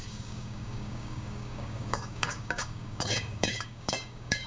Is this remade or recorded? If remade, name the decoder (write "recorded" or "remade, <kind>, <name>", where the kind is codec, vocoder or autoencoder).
remade, codec, DAC